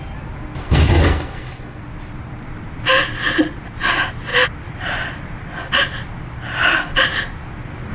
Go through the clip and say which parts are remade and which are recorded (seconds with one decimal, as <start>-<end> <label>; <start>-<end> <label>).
0.0-0.6 recorded; 0.6-1.8 remade; 1.8-7.9 recorded